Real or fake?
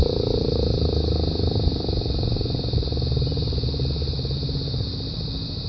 real